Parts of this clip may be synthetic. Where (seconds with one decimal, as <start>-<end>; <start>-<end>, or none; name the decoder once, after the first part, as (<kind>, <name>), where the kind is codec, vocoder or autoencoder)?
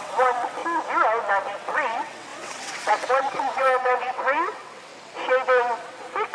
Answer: 0.0-0.6 (vocoder, WaveNeXt); 1.4-4.9; 5.8-6.3